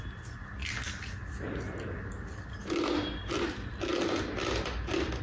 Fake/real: real